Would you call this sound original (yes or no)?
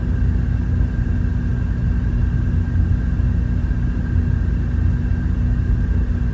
yes